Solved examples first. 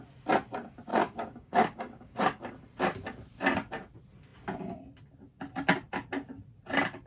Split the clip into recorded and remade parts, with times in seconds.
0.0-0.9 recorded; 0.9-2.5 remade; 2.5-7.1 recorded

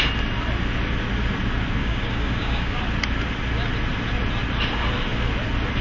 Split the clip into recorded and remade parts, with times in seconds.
0.0-1.8 recorded; 1.8-2.8 remade; 2.8-5.8 recorded